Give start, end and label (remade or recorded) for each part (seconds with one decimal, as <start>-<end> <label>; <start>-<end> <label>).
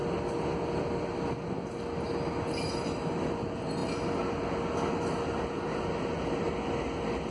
0.0-7.3 recorded